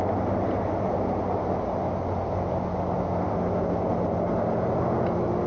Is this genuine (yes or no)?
yes